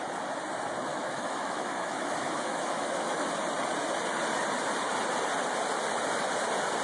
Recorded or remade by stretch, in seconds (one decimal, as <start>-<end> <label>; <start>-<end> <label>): 0.0-0.9 recorded; 0.9-3.3 remade; 3.3-6.8 recorded